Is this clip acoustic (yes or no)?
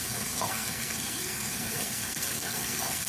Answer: no